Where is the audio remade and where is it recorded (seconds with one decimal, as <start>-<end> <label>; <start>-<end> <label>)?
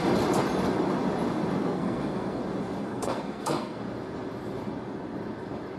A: 0.0-1.6 recorded; 1.6-2.4 remade; 2.4-2.8 recorded; 2.8-3.8 remade; 3.8-5.8 recorded